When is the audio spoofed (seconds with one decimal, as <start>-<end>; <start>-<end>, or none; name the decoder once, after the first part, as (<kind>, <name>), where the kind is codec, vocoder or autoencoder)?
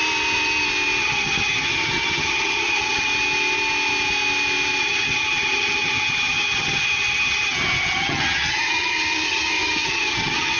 1.0-3.1 (vocoder, HiFi-GAN); 4.8-10.6